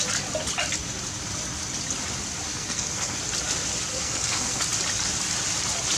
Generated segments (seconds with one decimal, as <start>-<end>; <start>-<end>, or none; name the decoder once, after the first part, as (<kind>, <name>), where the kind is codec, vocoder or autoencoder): 2.5-3.2 (codec, SNAC); 3.9-4.6